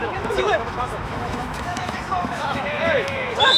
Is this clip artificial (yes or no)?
yes